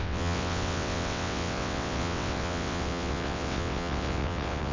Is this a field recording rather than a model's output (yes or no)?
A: no